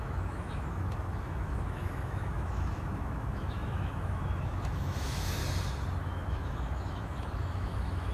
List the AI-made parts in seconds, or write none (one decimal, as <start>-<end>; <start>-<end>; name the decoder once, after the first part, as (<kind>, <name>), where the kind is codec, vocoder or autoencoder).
0.0-5.4 (autoencoder, DAC-VAE); 6.0-8.1